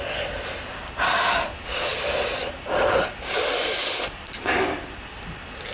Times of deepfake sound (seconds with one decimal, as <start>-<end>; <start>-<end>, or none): none